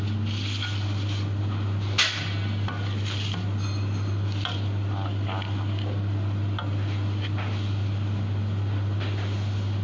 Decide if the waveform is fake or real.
real